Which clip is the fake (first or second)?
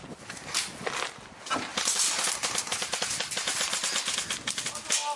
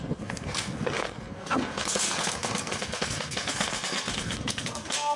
second